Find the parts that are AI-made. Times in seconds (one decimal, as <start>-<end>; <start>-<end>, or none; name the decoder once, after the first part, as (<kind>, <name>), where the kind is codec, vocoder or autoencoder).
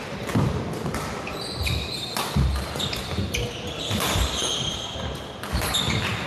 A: none